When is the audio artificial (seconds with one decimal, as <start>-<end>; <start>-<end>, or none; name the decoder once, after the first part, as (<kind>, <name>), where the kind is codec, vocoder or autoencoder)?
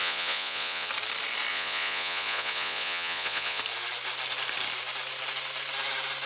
0.0-0.9 (vocoder, Vocos); 1.5-3.6